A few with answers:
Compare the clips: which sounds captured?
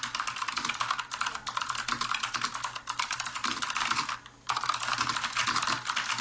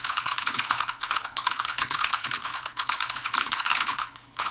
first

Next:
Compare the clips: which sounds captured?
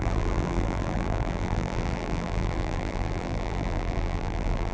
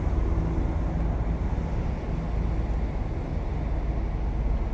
second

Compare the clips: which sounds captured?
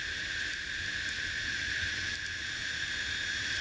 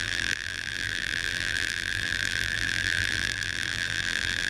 first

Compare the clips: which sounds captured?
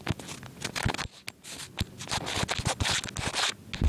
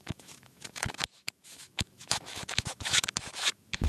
first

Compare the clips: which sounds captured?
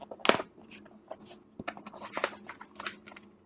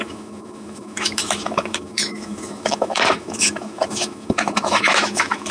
first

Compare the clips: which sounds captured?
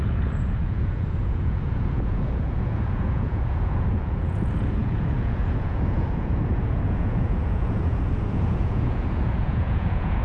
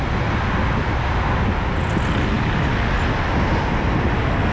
second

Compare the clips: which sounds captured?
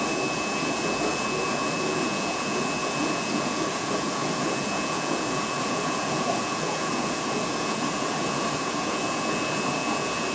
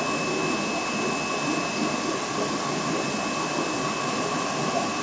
second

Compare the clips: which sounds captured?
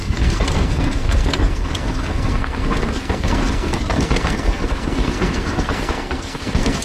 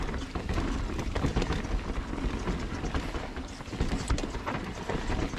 second